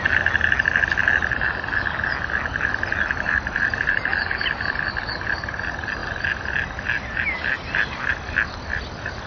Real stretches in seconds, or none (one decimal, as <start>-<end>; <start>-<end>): 0.0-9.3